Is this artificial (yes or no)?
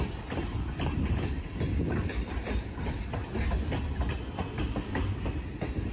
no